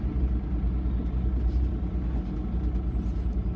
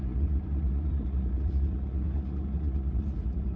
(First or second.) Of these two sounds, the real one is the first